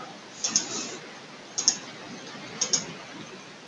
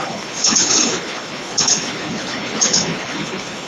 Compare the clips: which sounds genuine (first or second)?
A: first